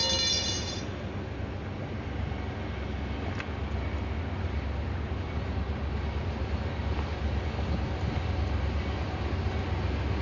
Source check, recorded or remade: recorded